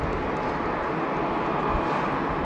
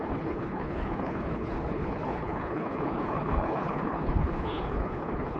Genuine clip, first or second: first